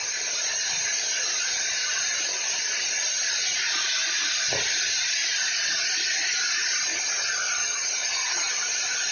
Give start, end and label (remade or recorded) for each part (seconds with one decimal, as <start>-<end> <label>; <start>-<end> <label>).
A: 0.0-7.6 recorded; 7.6-8.5 remade; 8.5-9.1 recorded